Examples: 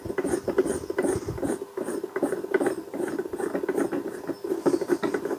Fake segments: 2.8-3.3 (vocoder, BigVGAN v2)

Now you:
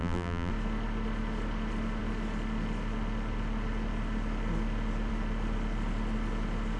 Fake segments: 0.0-0.5 (vocoder, BigVGAN v2)

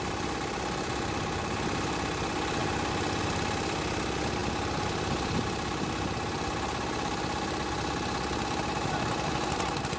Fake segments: none

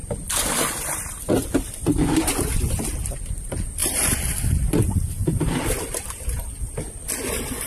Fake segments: 0.0-2.7 (vocoder, BigVGAN v2); 3.8-4.5

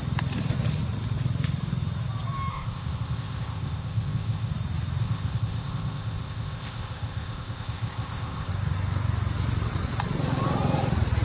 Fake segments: 2.5-4.5 (codec, ZipCodec); 5.0-8.5

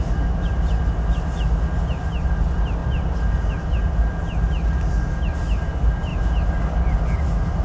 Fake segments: none